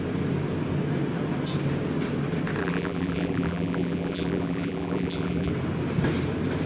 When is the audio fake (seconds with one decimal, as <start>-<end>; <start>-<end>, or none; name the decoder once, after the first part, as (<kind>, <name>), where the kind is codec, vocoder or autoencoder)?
2.6-5.5 (vocoder, BigVGAN v2)